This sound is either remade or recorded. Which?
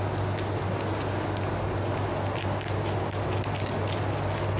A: recorded